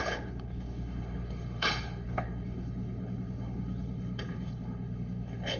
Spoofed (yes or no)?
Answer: yes